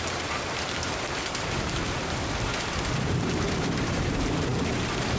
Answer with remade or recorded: remade